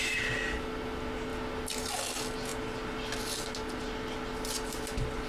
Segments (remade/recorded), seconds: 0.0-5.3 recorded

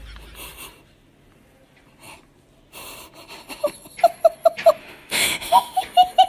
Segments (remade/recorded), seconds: 0.0-4.8 recorded; 4.8-5.8 remade; 5.8-6.3 recorded

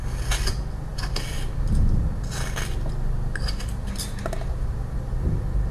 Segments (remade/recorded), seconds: 0.0-5.7 recorded